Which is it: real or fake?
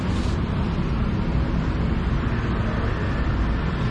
real